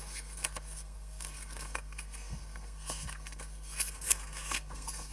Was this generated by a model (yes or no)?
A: yes